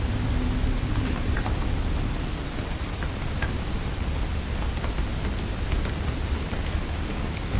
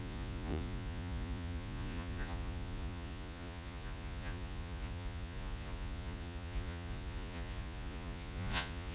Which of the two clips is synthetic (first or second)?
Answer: second